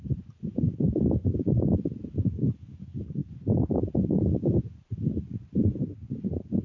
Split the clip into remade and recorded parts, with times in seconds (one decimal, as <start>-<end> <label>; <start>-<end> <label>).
0.0-6.6 recorded